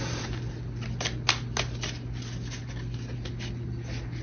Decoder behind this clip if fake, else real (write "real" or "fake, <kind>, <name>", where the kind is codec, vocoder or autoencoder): real